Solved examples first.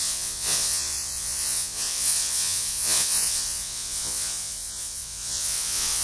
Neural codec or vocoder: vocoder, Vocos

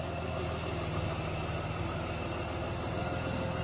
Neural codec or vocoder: none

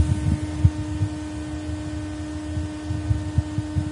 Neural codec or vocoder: none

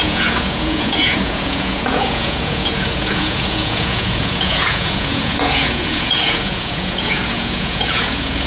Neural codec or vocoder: vocoder, Vocos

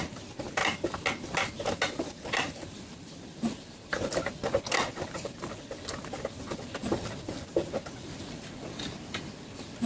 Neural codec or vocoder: none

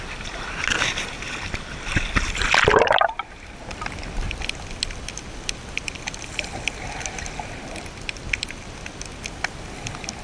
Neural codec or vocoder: none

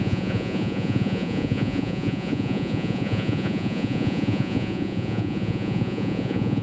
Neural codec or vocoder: vocoder, Vocos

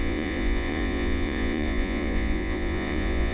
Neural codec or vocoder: vocoder, Vocos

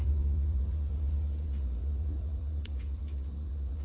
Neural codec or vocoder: vocoder, Vocos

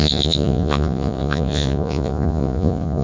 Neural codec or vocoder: vocoder, Vocos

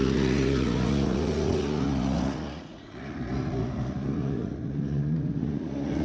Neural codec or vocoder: vocoder, Vocos